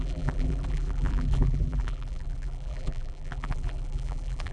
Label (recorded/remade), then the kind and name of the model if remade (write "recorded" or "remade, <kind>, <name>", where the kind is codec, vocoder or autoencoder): remade, vocoder, BigVGAN v2